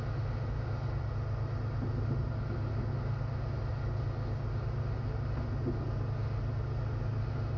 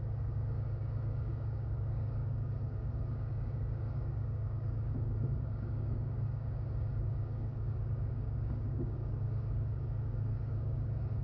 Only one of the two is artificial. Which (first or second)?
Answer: second